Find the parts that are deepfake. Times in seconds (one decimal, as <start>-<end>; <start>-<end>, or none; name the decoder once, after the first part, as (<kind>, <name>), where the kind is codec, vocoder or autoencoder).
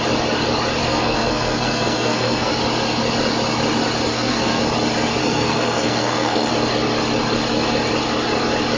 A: 0.8-2.5 (codec, SNAC); 4.1-4.6; 5.2-6.5